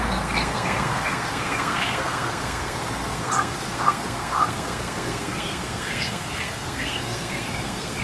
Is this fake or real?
fake